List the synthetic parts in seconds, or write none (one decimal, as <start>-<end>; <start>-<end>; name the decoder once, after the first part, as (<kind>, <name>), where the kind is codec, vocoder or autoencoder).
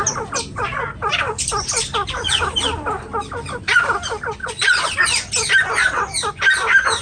4.4-5.0 (vocoder, Vocos)